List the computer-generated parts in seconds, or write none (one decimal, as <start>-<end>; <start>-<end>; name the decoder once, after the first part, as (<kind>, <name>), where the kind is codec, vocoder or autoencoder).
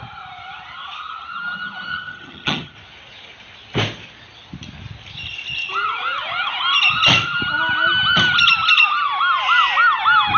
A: 1.9-2.7 (vocoder, HiFi-GAN)